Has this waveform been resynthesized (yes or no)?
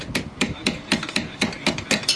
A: yes